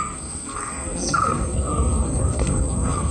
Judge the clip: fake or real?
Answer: fake